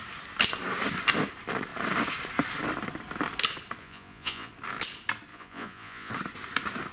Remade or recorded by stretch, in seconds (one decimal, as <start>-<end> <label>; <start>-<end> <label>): 0.0-3.8 recorded; 3.8-4.5 remade; 4.5-5.3 recorded; 5.3-6.1 remade; 6.1-6.9 recorded